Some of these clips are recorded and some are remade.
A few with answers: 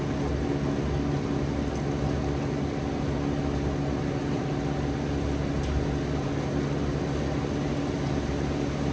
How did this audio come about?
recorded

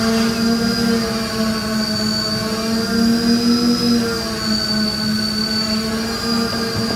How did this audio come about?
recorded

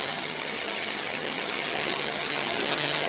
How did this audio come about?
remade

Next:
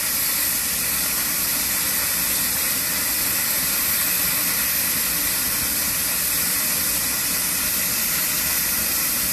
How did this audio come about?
recorded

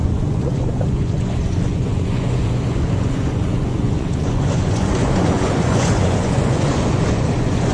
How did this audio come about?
remade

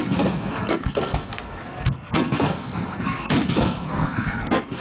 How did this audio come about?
remade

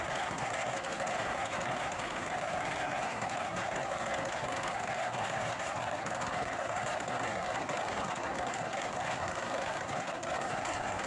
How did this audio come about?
remade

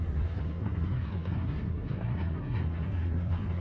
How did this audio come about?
remade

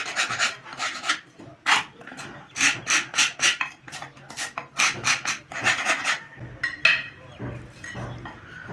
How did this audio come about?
recorded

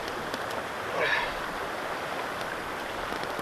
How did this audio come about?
recorded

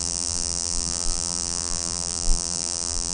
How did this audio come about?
remade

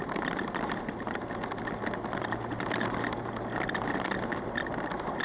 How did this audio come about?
recorded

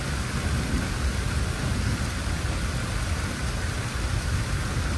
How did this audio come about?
recorded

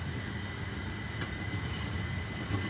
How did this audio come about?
recorded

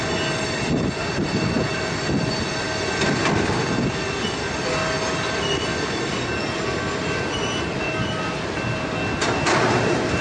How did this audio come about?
recorded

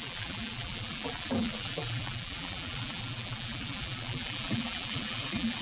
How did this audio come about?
remade